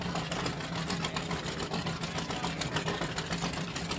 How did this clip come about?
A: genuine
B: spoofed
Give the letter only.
A